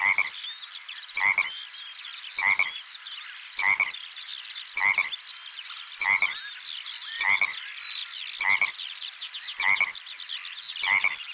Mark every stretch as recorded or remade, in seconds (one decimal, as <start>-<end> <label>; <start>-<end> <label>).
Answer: 0.0-11.3 recorded